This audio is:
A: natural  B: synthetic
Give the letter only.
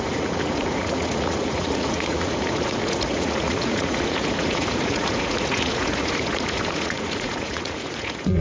B